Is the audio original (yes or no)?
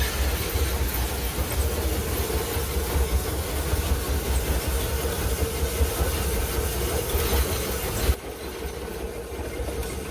yes